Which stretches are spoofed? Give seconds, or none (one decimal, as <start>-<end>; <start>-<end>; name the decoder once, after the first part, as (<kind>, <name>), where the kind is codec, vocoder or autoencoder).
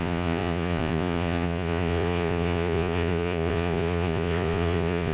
0.0-5.1 (vocoder, Vocos)